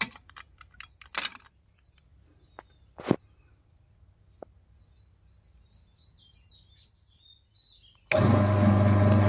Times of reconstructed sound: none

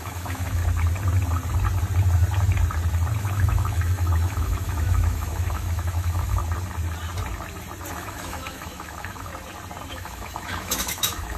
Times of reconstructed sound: 0.0-0.6 (autoencoder, DAC-VAE); 3.2-6.4; 7.9-9.3; 9.9-11.4

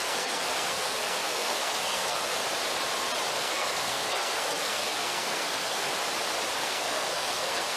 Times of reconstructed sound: 0.0-2.4 (codec, SNAC); 3.3-5.9; 6.6-7.8

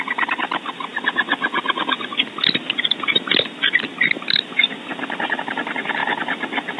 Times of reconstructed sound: none

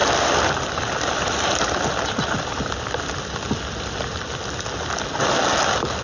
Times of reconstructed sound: 0.0-3.0 (vocoder, BigVGAN v2)

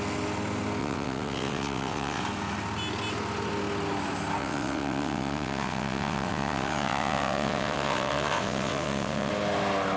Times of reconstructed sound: 0.8-2.2 (vocoder, WaveNeXt); 4.4-9.3

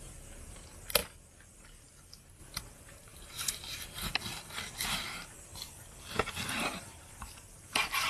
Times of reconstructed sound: 0.0-1.0 (vocoder, BigVGAN v2); 2.4-5.5; 6.4-8.1

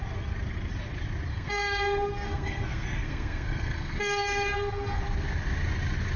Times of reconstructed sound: 1.3-5.0 (codec, SNAC)